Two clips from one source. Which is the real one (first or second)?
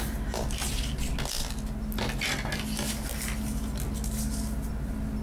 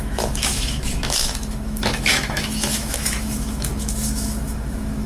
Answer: first